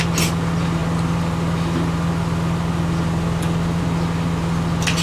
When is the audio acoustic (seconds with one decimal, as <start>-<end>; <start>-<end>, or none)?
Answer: 0.0-5.0